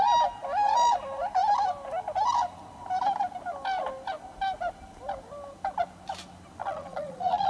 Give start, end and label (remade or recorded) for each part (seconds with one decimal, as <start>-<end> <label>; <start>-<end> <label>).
0.0-6.6 recorded; 6.6-7.5 remade